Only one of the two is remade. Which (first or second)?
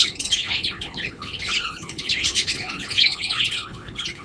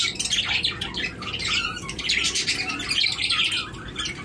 first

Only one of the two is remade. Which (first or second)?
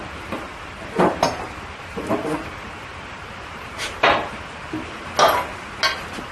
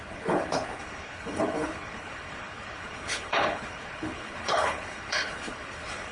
second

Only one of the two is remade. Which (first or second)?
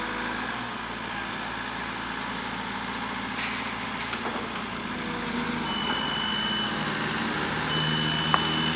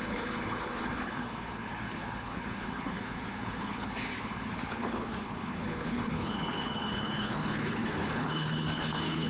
second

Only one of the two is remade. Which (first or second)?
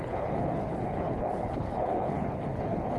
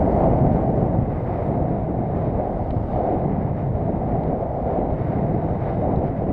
first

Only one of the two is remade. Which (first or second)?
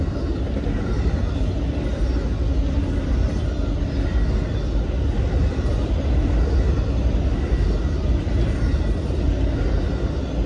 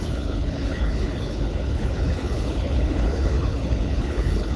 second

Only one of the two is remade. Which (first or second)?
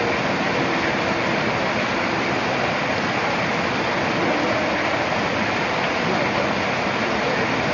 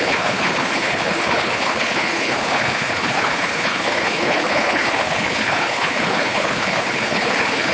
second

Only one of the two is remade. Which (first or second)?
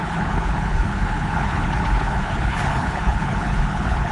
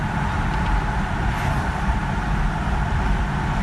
first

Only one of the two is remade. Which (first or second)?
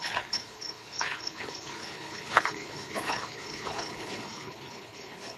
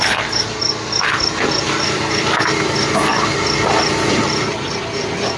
first